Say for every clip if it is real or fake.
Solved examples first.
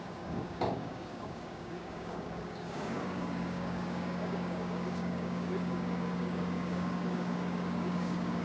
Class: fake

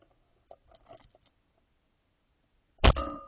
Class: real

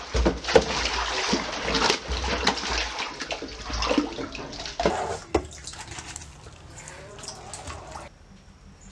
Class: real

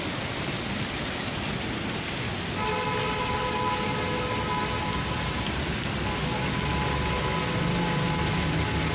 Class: real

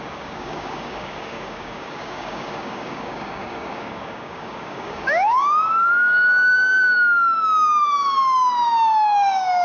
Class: fake